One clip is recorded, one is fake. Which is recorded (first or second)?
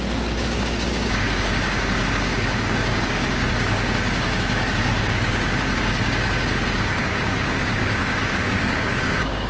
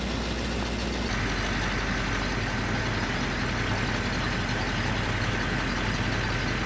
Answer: second